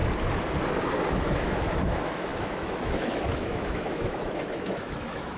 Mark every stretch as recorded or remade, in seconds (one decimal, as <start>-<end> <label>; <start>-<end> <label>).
0.0-1.1 recorded; 1.1-5.4 remade